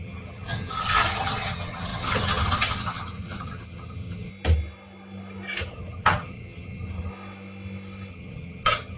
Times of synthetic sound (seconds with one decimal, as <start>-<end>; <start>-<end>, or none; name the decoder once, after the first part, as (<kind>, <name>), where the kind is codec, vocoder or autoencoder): 0.0-4.3 (vocoder, HiFi-GAN); 5.6-7.1; 8.1-9.0